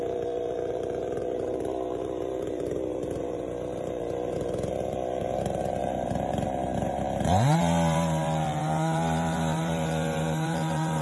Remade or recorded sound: remade